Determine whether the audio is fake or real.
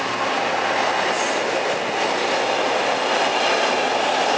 real